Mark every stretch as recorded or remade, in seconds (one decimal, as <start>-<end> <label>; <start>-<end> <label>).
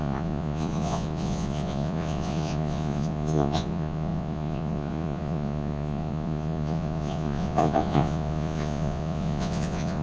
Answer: 0.0-10.0 remade